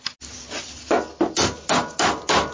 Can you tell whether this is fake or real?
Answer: real